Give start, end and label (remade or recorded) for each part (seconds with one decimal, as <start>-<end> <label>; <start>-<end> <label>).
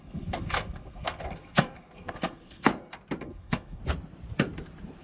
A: 0.0-2.7 remade; 2.7-3.2 recorded; 3.2-3.8 remade; 3.8-5.0 recorded